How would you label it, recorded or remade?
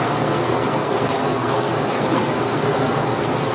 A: remade